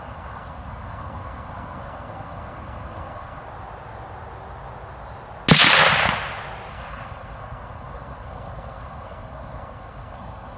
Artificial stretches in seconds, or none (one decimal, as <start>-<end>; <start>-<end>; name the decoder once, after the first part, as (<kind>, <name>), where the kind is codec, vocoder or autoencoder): 0.0-3.4 (codec, SNAC); 6.7-10.6